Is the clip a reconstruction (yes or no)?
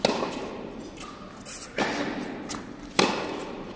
no